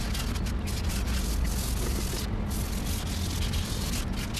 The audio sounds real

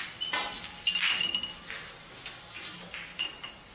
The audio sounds real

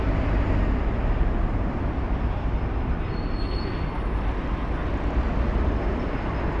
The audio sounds real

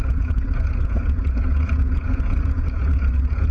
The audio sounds fake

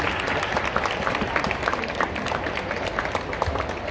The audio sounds real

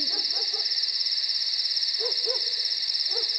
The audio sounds fake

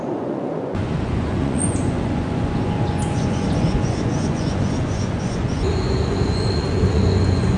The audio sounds fake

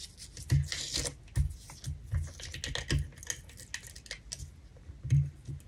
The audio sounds real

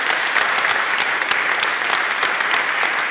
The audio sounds real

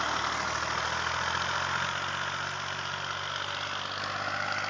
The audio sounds real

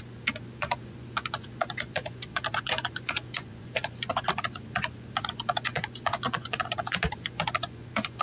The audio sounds fake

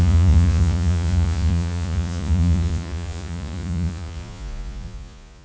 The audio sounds fake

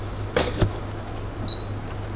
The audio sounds real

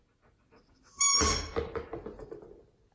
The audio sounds real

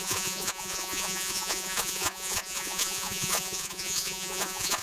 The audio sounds fake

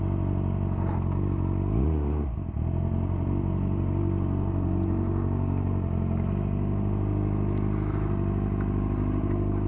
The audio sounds real